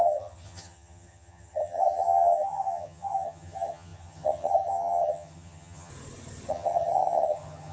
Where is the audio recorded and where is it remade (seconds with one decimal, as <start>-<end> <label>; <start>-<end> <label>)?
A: 0.0-5.9 remade; 5.9-6.5 recorded; 6.5-7.7 remade